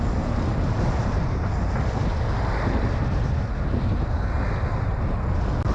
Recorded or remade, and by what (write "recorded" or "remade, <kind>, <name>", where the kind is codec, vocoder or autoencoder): recorded